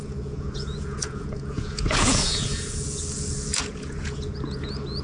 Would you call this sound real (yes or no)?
no